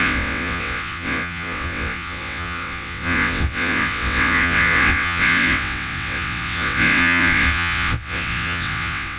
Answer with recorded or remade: remade